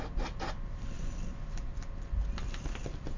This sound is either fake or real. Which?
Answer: real